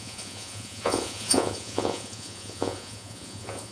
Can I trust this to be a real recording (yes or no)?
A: no